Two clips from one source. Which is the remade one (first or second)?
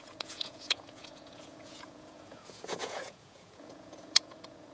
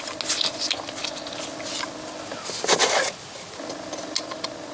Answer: first